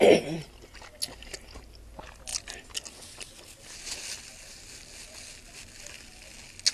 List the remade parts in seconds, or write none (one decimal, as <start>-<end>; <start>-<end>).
none